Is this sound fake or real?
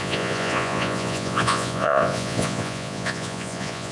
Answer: fake